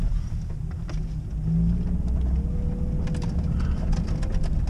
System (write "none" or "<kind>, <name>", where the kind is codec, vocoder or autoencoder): none